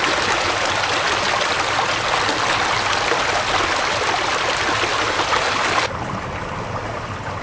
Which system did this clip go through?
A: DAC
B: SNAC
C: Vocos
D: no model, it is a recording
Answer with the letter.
D